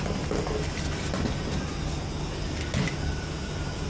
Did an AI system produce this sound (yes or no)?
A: no